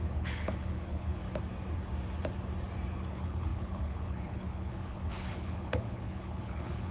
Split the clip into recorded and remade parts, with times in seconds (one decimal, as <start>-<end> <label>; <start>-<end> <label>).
0.0-1.2 remade; 1.2-3.1 recorded; 3.1-6.9 remade